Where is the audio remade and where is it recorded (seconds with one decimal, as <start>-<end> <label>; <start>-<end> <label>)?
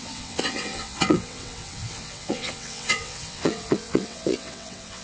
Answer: 0.0-5.0 remade